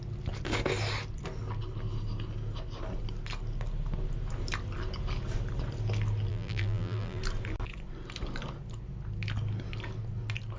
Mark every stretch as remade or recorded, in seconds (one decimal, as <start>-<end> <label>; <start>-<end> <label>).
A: 0.0-6.3 recorded; 6.3-7.2 remade; 7.2-10.6 recorded